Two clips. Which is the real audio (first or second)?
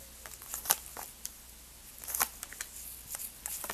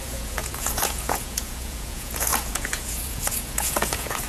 first